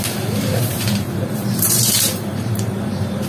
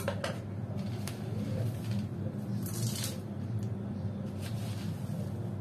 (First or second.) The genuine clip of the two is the second